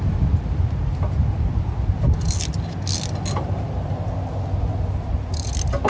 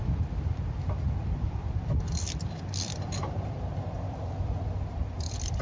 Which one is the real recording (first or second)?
first